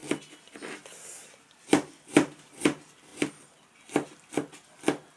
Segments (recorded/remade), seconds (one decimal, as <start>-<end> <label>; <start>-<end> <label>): 0.0-5.2 recorded